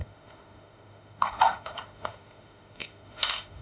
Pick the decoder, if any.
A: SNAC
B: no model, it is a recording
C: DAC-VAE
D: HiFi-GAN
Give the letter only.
C